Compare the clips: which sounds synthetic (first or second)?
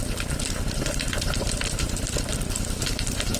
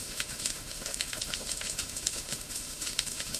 second